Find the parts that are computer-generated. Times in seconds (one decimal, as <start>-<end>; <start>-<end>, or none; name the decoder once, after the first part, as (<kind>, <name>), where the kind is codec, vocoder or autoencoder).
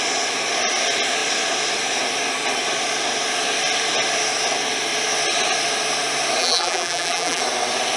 6.4-7.4 (vocoder, BigVGAN v2)